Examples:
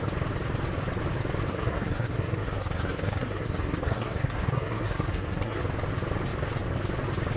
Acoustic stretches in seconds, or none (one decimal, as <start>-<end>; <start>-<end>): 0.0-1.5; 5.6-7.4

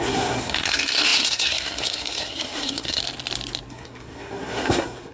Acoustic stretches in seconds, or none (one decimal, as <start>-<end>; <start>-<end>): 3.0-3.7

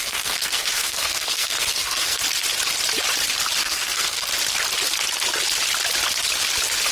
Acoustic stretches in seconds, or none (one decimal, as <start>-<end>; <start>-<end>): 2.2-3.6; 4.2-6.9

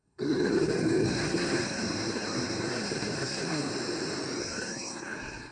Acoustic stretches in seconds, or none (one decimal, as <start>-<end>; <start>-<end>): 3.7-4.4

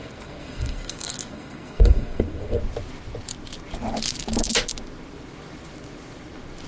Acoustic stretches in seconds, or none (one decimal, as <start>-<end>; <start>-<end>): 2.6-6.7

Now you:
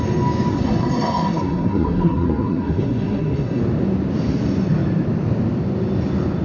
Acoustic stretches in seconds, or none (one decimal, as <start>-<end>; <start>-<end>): 0.0-0.5; 3.6-6.4